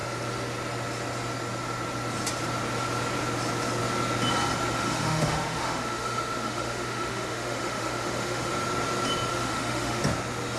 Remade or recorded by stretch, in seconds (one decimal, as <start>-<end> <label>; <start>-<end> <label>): 0.0-4.7 recorded; 4.7-8.5 remade; 8.5-9.3 recorded; 9.3-10.0 remade; 10.0-10.6 recorded